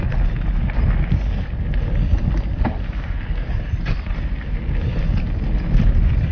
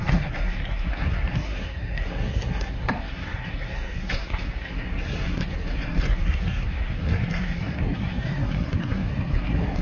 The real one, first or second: first